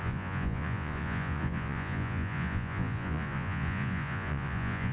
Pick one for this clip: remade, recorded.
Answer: remade